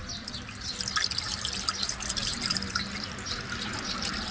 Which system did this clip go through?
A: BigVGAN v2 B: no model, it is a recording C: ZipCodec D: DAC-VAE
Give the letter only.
B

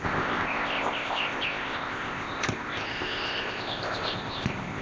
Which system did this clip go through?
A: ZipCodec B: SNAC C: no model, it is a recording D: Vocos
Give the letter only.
A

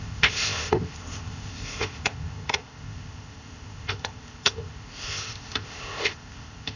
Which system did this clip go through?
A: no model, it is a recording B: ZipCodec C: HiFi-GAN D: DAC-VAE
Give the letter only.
B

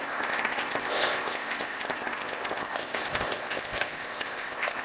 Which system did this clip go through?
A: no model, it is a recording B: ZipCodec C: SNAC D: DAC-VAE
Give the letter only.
B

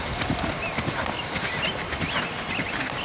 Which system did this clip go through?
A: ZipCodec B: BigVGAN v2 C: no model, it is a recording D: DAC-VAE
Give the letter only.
C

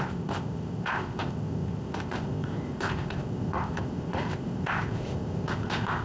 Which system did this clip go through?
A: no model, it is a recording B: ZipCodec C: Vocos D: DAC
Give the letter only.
B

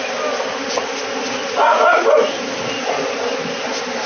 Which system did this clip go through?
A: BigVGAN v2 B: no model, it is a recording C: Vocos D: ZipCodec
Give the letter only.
B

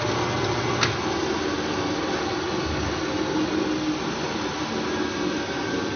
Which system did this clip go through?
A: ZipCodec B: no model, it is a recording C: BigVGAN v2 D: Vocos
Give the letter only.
B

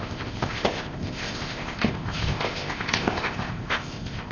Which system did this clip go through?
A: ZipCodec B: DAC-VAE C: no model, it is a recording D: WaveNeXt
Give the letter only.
A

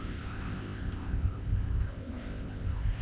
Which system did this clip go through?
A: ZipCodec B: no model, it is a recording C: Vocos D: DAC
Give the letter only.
A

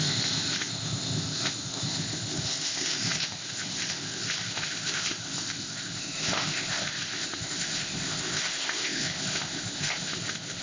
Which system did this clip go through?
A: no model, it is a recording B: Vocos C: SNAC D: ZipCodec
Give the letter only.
D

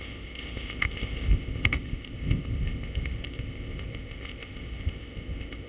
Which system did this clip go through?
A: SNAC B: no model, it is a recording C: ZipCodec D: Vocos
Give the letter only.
C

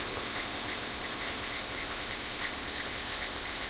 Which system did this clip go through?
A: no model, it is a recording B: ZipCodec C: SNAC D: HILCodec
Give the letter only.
B